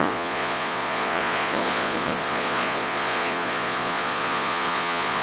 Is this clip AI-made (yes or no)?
yes